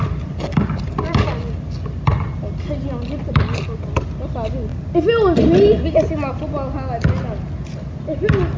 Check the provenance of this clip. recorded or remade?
recorded